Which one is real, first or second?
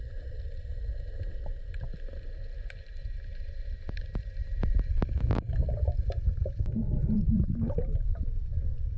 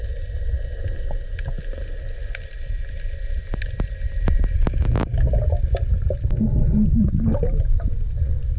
second